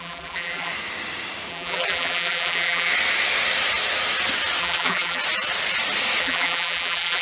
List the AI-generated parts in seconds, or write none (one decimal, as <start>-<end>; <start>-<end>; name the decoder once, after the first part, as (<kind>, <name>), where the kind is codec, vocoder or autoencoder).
0.0-0.7 (vocoder, BigVGAN v2); 1.5-2.9; 4.6-5.2; 6.2-7.2